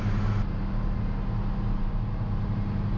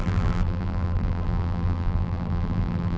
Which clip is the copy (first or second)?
second